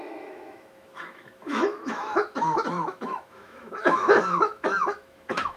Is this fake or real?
fake